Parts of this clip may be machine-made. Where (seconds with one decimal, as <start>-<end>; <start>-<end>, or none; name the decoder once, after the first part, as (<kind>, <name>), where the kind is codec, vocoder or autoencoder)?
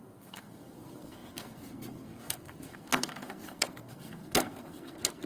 0.0-5.3 (codec, SNAC)